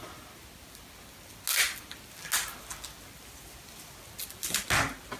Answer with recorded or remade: recorded